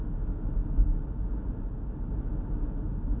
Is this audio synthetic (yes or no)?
no